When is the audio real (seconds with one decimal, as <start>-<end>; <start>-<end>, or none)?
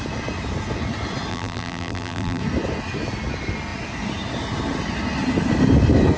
0.0-1.3; 2.4-6.2